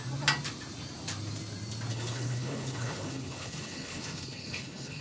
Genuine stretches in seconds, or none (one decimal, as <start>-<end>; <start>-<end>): 0.0-1.9